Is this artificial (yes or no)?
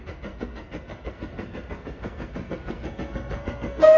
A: yes